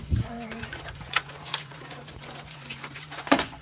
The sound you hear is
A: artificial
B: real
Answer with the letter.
A